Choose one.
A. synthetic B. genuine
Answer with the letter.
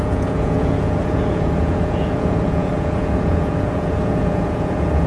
A